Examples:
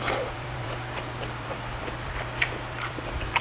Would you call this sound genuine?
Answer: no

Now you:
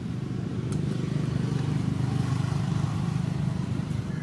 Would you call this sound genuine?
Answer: yes